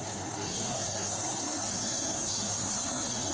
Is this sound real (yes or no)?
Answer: no